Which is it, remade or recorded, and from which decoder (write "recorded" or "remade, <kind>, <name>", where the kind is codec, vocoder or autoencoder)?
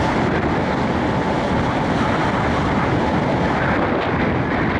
recorded